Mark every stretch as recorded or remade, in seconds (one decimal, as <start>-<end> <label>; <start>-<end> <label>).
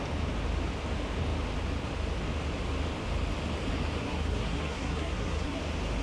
0.0-4.0 recorded; 4.0-5.6 remade; 5.6-6.0 recorded